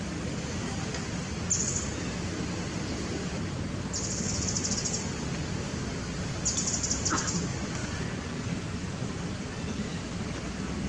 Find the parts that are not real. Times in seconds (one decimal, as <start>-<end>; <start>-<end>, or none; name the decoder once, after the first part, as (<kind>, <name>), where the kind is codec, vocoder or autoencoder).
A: 7.8-9.1 (vocoder, Vocos)